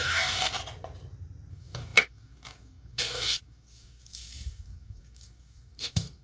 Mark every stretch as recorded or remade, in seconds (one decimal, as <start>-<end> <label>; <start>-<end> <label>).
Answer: 0.0-0.6 remade; 0.6-1.5 recorded; 1.5-6.2 remade